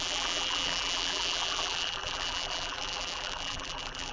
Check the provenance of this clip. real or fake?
fake